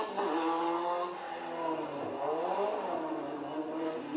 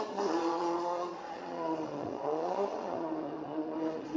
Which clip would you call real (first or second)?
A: first